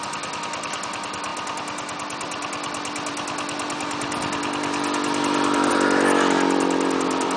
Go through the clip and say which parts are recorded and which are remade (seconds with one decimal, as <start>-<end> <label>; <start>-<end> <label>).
0.0-7.4 recorded